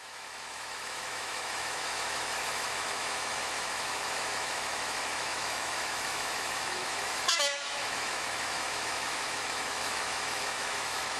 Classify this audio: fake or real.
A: fake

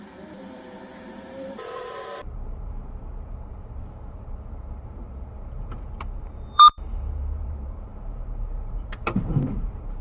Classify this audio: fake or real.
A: fake